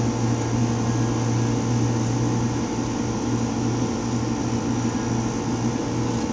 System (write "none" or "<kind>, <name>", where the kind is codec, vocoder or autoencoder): none